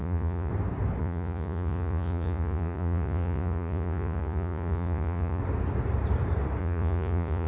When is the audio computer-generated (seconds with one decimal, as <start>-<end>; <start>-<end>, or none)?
0.0-0.5; 1.0-5.4; 6.6-7.5